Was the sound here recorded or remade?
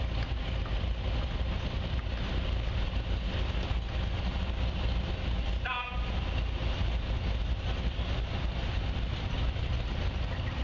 recorded